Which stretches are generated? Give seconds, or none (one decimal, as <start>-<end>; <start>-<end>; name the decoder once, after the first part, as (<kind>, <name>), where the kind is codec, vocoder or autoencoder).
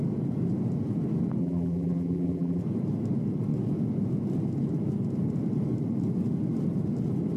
1.4-2.6 (vocoder, BigVGAN v2)